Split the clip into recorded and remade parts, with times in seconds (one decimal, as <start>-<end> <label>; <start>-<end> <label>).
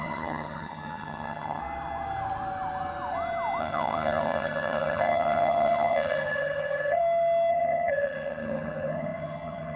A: 0.0-1.6 remade; 1.6-3.6 recorded; 3.6-7.0 remade; 7.0-7.5 recorded; 7.5-9.8 remade